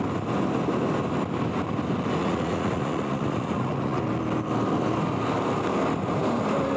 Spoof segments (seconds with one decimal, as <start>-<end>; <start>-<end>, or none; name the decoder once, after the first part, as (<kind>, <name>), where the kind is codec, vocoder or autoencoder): 2.2-4.0 (vocoder, Vocos)